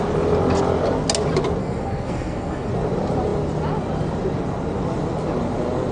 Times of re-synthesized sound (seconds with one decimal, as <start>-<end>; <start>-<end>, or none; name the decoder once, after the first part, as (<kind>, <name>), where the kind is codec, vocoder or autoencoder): 1.6-2.7 (codec, SNAC)